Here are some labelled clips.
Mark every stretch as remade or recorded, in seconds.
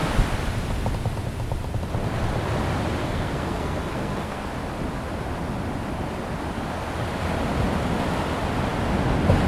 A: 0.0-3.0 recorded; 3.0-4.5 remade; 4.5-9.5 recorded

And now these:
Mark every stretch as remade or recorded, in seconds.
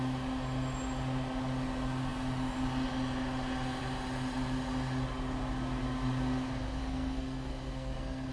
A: 0.0-6.8 recorded; 6.8-8.3 remade